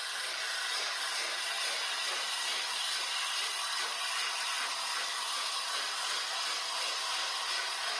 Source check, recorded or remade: recorded